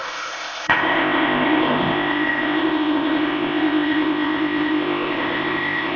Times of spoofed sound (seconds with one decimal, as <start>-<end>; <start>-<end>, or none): 0.0-6.0